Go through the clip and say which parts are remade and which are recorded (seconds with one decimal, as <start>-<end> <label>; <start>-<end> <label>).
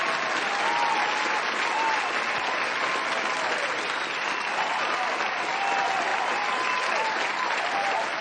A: 0.0-8.2 recorded